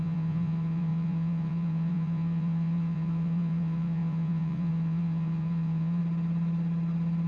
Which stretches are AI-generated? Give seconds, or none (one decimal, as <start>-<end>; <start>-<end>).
0.0-6.0